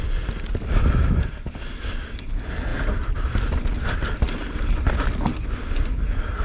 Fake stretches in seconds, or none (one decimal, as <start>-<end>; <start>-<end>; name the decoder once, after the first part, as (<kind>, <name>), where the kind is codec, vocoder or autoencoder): none